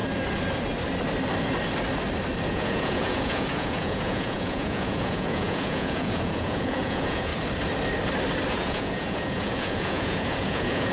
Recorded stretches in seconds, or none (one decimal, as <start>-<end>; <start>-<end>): 0.0-2.5; 7.3-8.5